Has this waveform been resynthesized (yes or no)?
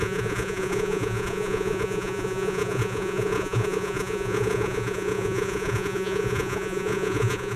yes